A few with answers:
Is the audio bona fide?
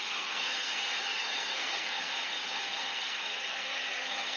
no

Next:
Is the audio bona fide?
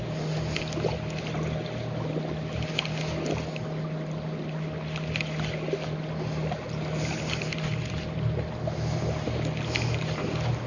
yes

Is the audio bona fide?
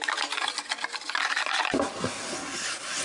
yes